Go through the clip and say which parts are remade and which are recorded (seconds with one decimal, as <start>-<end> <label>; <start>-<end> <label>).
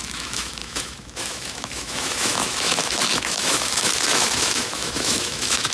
0.0-5.7 remade